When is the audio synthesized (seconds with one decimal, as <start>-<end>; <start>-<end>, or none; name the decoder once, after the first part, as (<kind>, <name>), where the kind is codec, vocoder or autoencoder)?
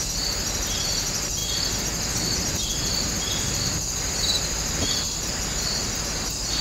none